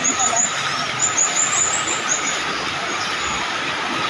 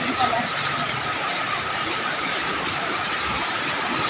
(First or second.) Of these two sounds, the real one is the first